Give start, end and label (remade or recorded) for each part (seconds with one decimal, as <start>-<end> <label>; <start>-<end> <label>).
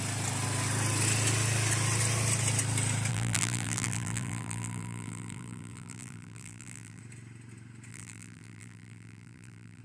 0.0-3.1 recorded; 3.1-7.0 remade; 7.0-7.9 recorded; 7.9-9.8 remade